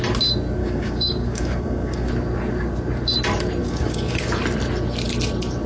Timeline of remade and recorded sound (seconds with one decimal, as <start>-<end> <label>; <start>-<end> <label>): 0.0-0.6 recorded; 0.6-2.1 remade; 2.1-3.6 recorded; 3.6-4.2 remade; 4.2-5.7 recorded